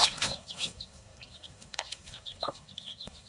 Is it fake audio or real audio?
fake